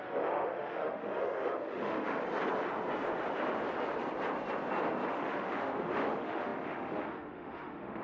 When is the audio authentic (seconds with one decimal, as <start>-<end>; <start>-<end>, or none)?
2.2-5.1